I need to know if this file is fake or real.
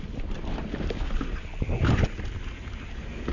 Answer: real